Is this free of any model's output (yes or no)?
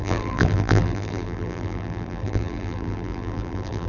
no